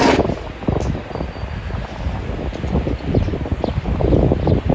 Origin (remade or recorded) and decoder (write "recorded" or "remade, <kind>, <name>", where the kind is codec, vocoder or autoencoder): recorded